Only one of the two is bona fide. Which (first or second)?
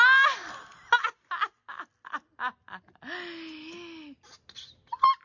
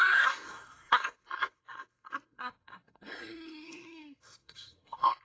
first